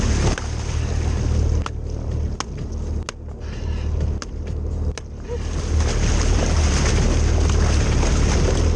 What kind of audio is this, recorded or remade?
recorded